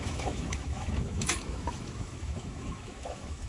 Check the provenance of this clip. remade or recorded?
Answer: remade